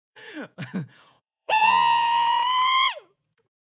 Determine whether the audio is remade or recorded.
remade